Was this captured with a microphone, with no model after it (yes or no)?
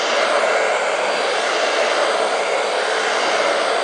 yes